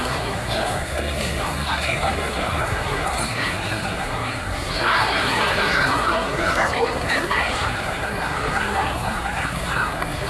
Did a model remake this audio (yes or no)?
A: yes